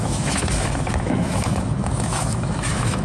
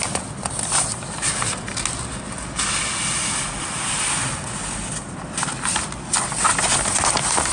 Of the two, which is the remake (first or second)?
first